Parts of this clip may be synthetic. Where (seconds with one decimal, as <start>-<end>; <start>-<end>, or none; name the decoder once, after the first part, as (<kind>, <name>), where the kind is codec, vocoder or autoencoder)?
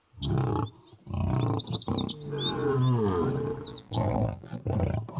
3.7-4.6 (vocoder, BigVGAN v2)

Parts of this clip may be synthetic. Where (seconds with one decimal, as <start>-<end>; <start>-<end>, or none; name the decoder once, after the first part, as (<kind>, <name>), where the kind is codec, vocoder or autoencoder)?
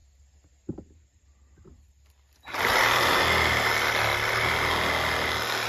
none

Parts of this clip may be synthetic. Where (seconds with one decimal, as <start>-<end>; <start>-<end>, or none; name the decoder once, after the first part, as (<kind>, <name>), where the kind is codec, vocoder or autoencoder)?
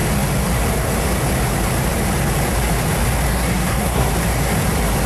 3.3-4.1 (codec, SNAC)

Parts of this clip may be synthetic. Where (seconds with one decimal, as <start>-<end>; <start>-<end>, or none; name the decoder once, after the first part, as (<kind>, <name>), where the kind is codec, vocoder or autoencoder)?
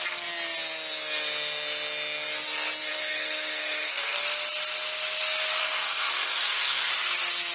2.9-4.2 (codec, SNAC); 5.6-6.9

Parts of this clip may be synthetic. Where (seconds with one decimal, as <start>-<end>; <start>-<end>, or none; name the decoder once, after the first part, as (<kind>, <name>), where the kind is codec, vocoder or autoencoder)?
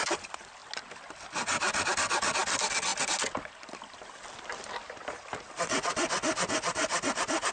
none